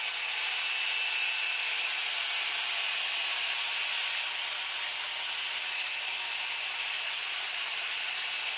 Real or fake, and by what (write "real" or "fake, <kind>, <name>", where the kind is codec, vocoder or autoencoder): real